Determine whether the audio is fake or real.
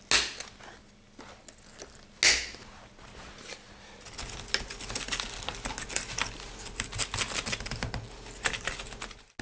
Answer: real